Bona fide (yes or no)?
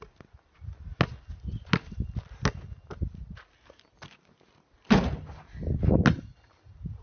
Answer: yes